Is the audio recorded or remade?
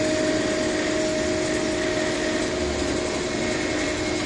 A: recorded